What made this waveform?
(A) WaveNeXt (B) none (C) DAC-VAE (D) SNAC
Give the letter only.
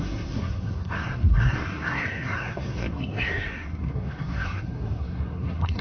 D